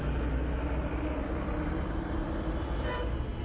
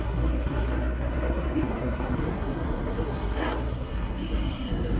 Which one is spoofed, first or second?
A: second